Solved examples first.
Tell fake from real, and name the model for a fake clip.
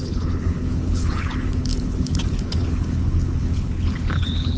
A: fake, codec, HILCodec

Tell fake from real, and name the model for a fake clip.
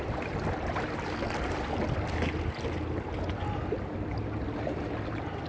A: real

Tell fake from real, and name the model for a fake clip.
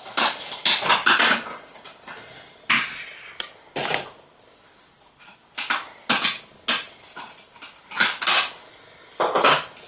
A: real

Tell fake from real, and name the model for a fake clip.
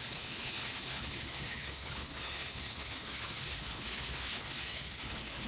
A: fake, codec, HILCodec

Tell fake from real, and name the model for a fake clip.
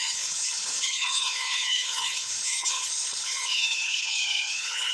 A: fake, codec, HILCodec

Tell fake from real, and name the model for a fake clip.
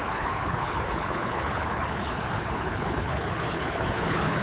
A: fake, codec, HILCodec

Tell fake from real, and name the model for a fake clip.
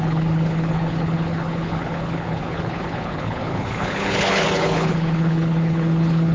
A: fake, codec, HILCodec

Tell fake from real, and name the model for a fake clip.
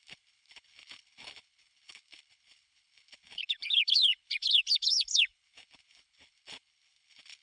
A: fake, codec, HILCodec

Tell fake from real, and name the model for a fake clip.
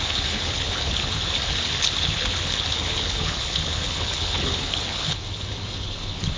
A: fake, codec, HILCodec